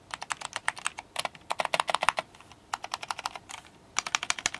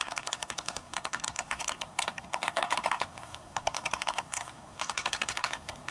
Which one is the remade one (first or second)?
second